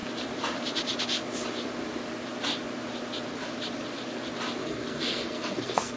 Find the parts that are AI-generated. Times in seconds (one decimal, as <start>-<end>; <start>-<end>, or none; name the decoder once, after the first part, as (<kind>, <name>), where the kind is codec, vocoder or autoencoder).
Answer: 4.6-6.0 (codec, SNAC)